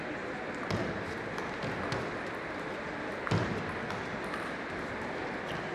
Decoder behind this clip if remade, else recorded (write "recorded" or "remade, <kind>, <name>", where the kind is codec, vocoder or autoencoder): recorded